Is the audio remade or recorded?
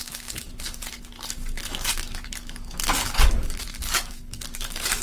remade